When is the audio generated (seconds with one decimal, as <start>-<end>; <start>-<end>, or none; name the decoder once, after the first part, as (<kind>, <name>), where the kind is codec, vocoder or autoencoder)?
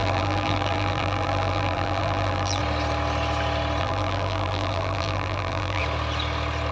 0.0-2.6 (vocoder, BigVGAN v2); 3.8-5.8